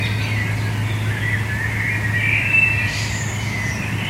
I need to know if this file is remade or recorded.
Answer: recorded